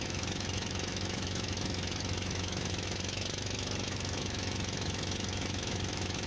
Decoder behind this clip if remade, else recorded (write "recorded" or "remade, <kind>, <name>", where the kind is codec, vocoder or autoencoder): remade, autoencoder, DAC-VAE